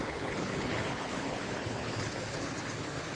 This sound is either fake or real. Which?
fake